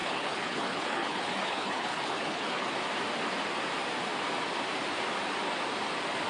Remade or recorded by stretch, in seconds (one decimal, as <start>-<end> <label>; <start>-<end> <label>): 0.0-2.7 remade; 2.7-6.3 recorded